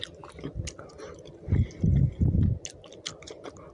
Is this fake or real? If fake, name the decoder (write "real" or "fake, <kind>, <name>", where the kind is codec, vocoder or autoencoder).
real